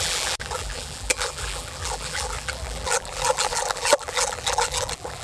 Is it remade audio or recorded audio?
remade